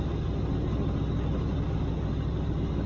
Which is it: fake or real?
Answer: real